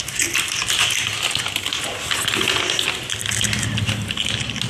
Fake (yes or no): no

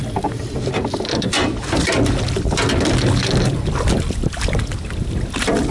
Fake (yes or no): yes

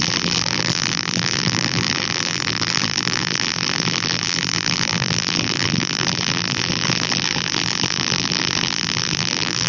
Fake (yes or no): yes